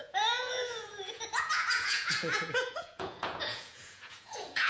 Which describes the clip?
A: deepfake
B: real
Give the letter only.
A